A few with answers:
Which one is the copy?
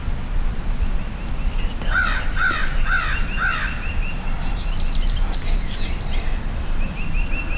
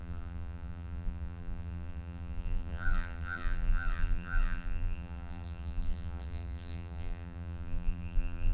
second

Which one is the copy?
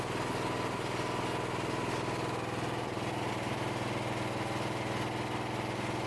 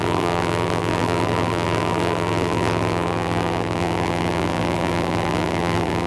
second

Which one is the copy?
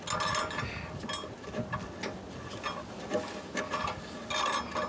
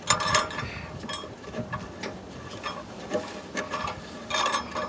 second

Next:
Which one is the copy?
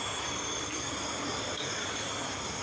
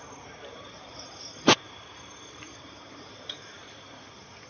second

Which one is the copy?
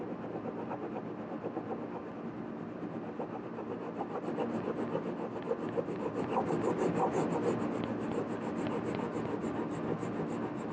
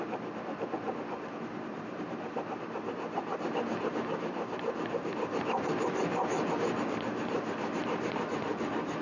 second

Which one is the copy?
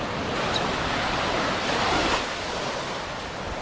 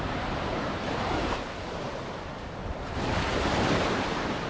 second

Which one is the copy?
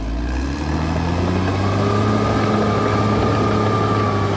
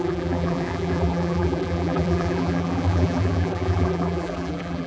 second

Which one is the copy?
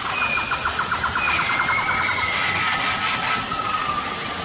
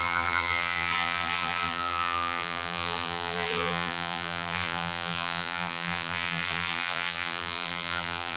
second